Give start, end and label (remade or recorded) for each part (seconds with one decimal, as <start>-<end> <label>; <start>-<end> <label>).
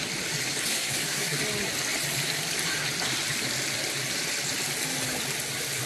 0.0-0.7 recorded; 0.7-1.4 remade; 1.4-5.9 recorded